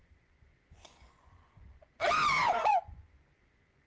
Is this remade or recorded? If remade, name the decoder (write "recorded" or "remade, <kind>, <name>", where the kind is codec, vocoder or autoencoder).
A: remade, vocoder, Vocos